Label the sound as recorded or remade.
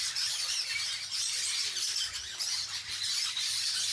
recorded